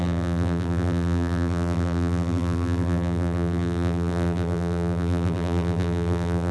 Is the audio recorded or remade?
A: remade